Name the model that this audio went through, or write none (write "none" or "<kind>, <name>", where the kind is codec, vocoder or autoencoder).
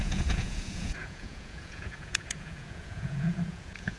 vocoder, Vocos